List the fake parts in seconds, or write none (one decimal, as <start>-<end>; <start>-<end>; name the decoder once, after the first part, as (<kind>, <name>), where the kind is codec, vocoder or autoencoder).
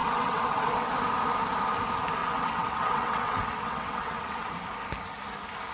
0.0-0.9 (vocoder, WaveNeXt); 2.2-4.5